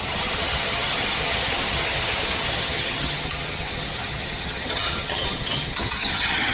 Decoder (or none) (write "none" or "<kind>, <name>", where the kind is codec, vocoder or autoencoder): vocoder, HiFi-GAN